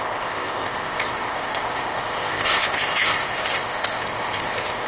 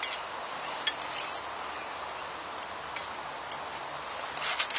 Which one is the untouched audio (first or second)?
second